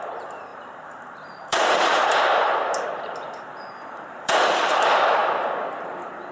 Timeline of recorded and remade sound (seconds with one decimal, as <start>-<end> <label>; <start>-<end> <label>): 0.0-0.5 recorded; 0.5-4.3 remade; 4.3-6.3 recorded